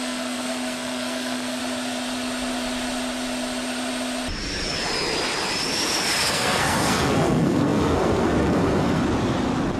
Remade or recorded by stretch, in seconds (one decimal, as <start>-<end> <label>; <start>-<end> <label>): 0.0-1.6 remade; 1.6-6.2 recorded; 6.2-9.0 remade; 9.0-9.8 recorded